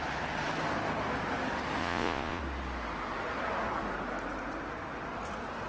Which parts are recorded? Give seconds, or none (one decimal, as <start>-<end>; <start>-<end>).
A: 0.0-1.8; 2.4-5.7